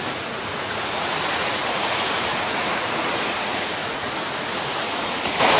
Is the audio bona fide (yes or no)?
no